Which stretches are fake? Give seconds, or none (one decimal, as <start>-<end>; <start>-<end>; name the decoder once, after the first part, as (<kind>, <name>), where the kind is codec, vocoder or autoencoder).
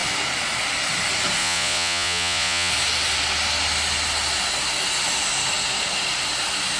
1.4-2.7 (vocoder, Vocos)